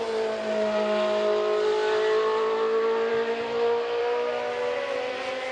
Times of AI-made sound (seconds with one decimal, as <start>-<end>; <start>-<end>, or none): none